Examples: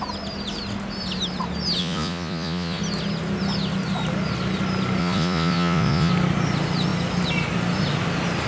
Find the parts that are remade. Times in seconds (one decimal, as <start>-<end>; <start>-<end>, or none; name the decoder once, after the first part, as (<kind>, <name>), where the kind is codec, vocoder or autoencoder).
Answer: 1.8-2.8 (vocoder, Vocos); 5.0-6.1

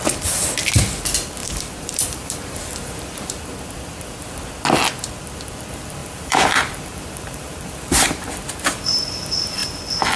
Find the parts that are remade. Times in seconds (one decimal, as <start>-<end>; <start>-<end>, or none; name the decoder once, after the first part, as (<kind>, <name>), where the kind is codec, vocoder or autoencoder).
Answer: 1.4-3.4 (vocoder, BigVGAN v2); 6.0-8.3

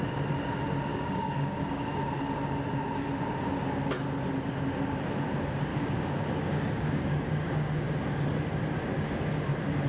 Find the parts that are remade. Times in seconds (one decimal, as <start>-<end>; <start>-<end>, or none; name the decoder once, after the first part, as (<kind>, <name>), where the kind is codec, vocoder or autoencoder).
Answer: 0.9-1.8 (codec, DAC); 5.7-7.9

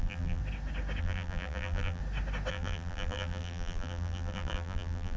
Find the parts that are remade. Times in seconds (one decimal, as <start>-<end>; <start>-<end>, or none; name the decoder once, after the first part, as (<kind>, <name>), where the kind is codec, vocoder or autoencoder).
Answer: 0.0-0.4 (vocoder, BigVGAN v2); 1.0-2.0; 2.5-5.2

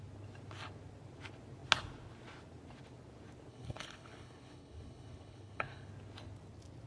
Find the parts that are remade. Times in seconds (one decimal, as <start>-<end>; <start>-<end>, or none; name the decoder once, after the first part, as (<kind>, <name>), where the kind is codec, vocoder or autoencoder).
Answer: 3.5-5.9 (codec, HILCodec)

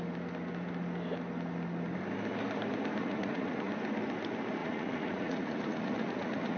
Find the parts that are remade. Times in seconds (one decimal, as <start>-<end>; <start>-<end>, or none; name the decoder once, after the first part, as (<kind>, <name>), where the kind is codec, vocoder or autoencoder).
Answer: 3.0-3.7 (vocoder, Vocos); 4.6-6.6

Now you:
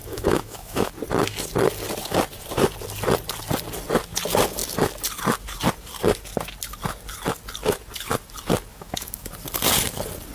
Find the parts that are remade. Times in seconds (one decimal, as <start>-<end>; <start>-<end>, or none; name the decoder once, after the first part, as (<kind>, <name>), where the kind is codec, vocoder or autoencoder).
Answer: 0.0-0.9 (autoencoder, DAC-VAE); 8.7-9.3